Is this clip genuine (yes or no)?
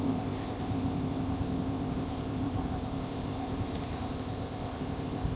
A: no